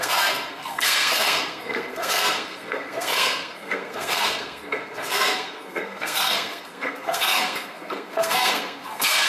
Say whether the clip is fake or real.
fake